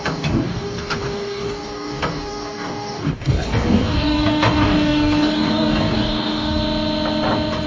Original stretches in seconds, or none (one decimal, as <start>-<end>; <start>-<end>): 6.6-7.7